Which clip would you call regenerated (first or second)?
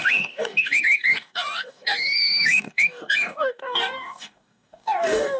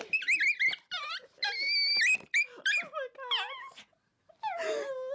first